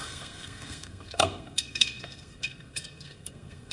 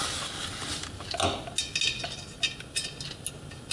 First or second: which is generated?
first